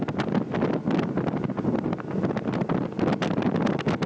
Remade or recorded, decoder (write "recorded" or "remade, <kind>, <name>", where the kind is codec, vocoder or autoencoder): recorded